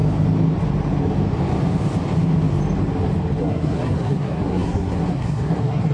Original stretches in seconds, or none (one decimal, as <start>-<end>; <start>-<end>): 0.0-3.4